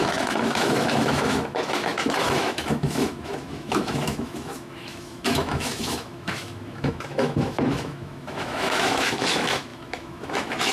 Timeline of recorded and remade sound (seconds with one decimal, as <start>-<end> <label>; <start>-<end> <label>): 0.0-10.7 remade